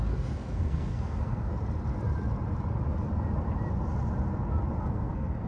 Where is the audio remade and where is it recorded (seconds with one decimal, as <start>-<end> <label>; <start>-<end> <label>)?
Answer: 0.0-1.5 remade; 1.5-4.8 recorded; 4.8-5.5 remade